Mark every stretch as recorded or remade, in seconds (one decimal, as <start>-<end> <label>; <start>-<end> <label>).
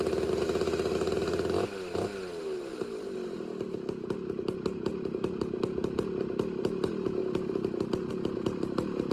0.0-9.1 recorded